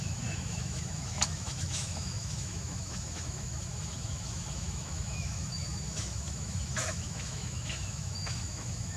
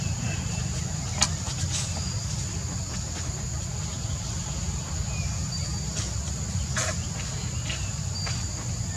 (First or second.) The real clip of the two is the second